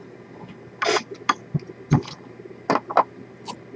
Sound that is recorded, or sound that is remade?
recorded